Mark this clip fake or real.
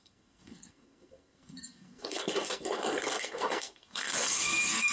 fake